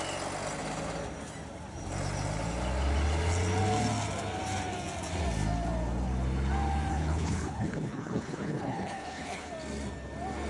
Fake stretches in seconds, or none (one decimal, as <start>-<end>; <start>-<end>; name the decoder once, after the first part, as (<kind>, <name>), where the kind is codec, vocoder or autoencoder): 6.9-9.5 (codec, HILCodec)

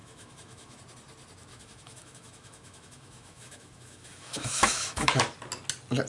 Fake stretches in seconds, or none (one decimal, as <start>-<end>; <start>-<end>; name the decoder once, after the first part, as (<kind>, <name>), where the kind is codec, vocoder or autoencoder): 0.0-0.8 (autoencoder, DAC-VAE); 1.5-5.2

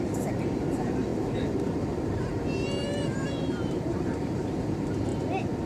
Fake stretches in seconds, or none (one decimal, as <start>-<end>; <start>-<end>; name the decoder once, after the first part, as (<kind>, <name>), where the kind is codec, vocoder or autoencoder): 0.0-2.3 (vocoder, BigVGAN v2); 2.8-5.1